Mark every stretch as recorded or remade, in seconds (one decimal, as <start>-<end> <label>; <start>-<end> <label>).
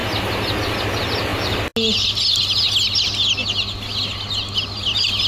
0.0-5.3 recorded